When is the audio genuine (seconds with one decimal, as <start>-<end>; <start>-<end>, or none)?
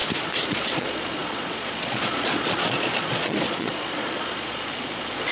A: 0.0-0.5